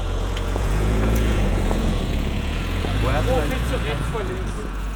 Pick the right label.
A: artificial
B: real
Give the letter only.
A